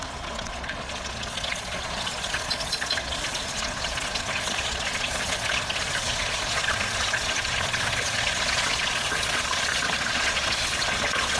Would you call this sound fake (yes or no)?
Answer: yes